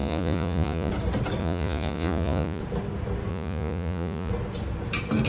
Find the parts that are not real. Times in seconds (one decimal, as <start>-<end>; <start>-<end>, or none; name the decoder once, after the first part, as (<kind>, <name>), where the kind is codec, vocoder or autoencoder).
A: 0.0-0.9 (vocoder, Vocos); 1.4-2.6; 3.3-4.3